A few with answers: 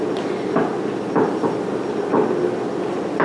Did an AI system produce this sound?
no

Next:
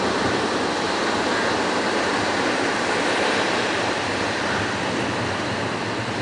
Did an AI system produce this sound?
no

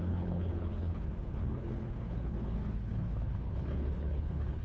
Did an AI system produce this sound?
yes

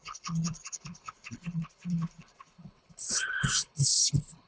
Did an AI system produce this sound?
yes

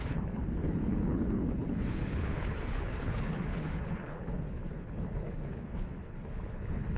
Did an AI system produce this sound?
yes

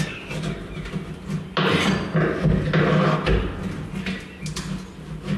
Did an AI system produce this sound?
no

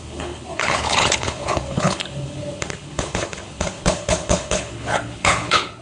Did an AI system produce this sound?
yes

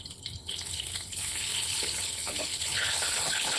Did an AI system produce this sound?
yes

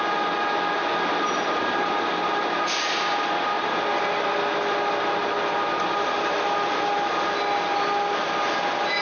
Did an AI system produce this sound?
no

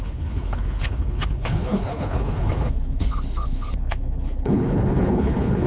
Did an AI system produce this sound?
yes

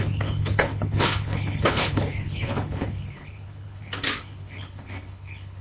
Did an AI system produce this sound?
yes